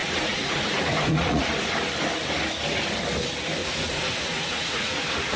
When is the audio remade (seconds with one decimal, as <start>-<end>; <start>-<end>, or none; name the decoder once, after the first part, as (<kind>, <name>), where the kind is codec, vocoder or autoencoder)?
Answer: 0.0-1.4 (vocoder, Vocos); 3.6-5.0